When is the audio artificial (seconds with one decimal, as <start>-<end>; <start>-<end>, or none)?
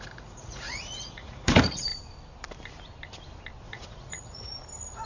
0.0-1.9; 3.6-4.5